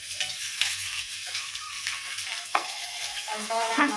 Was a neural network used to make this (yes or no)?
yes